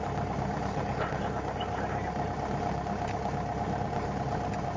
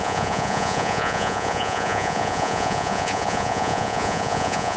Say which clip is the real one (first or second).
first